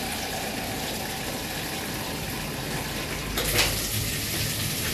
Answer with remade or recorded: recorded